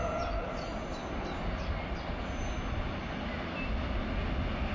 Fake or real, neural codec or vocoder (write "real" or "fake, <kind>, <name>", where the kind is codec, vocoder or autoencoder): real